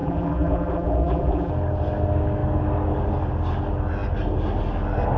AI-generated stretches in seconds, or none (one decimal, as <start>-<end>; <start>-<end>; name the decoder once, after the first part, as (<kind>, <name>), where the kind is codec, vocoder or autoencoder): 0.0-1.5 (vocoder, BigVGAN v2)